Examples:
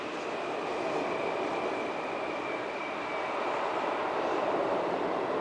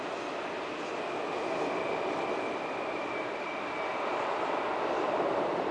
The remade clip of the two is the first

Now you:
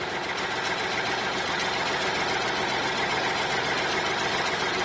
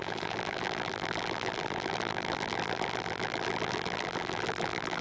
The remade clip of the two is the second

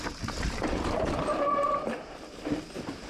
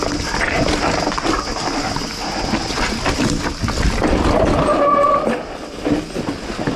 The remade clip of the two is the first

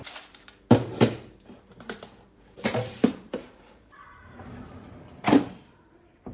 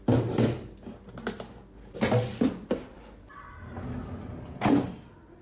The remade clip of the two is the first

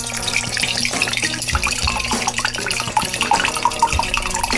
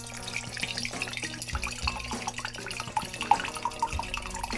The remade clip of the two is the first